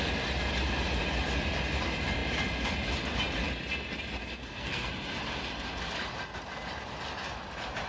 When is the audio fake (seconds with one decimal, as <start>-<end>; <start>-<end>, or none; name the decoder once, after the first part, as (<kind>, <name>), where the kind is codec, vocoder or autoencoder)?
4.2-4.9 (codec, SNAC)